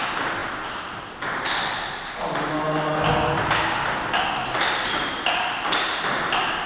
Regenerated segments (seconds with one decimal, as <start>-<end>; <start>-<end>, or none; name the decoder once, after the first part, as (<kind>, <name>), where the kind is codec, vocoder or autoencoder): none